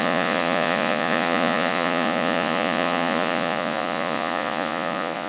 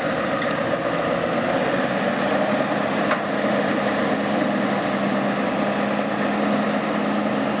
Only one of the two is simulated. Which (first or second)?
first